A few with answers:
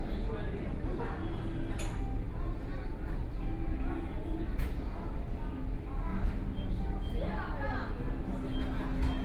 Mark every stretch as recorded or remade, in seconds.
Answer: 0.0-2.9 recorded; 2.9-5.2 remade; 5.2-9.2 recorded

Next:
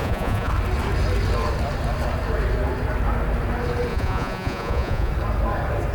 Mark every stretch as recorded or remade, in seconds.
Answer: 0.0-0.5 remade; 0.5-3.9 recorded; 3.9-5.1 remade; 5.1-5.9 recorded